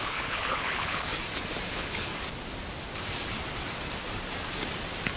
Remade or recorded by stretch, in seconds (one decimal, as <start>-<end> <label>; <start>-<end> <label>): 0.0-1.1 remade; 1.1-1.7 recorded; 1.7-2.1 remade; 2.1-5.2 recorded